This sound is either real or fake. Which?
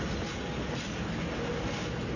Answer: real